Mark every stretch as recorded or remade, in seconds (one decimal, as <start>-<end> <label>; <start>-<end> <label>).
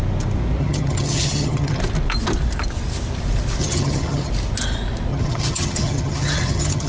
0.0-0.6 recorded; 0.6-1.8 remade; 1.8-3.6 recorded; 3.6-4.3 remade; 4.3-5.1 recorded; 5.1-6.9 remade